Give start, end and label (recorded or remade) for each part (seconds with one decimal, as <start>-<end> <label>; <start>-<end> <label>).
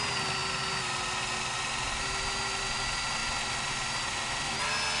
0.0-5.0 recorded